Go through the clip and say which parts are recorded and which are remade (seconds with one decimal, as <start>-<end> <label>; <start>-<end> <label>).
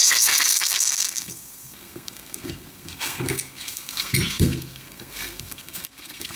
0.0-6.4 remade